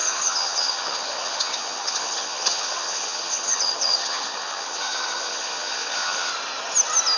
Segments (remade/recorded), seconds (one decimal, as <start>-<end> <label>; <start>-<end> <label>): 0.0-6.3 remade; 6.3-7.2 recorded